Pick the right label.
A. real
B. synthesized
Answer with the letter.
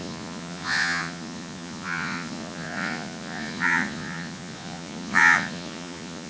B